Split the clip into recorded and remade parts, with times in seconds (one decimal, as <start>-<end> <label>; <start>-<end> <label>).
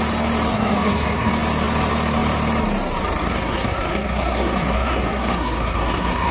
0.0-0.5 recorded; 0.5-1.3 remade; 1.3-3.2 recorded; 3.2-6.3 remade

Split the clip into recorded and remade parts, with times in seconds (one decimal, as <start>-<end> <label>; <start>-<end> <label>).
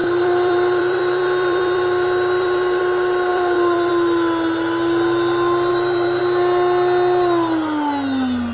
0.0-2.8 remade; 2.8-3.3 recorded; 3.3-3.9 remade; 3.9-5.7 recorded; 5.7-6.2 remade; 6.2-8.5 recorded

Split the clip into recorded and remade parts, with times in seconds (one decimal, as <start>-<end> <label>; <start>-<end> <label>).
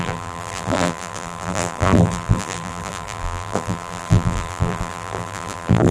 0.0-5.9 remade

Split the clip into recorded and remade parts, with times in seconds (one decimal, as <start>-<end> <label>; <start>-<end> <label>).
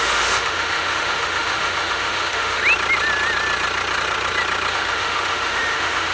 0.0-2.6 remade; 2.6-4.7 recorded; 4.7-6.1 remade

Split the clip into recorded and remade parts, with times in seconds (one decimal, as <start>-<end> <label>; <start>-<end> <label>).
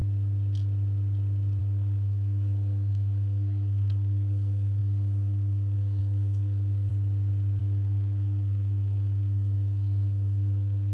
0.0-1.6 recorded; 1.6-6.9 remade; 6.9-7.6 recorded; 7.6-10.9 remade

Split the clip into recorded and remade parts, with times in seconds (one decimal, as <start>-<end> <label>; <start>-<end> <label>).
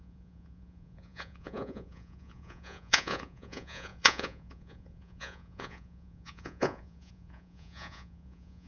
0.0-8.7 remade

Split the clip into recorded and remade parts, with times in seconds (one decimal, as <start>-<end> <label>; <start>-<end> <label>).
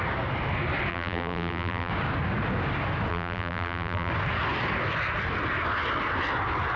0.0-0.9 recorded; 0.9-1.9 remade; 1.9-3.1 recorded; 3.1-4.1 remade; 4.1-6.8 recorded